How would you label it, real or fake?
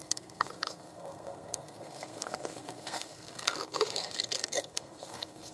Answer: fake